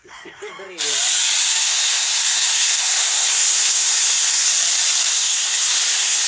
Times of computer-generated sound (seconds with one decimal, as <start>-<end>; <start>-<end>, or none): 0.0-0.5; 1.6-4.5; 5.1-6.3